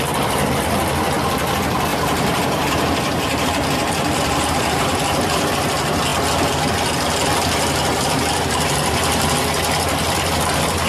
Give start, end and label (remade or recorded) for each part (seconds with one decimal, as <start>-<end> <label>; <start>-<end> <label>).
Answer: 0.0-1.9 recorded; 1.9-5.5 remade; 5.5-10.9 recorded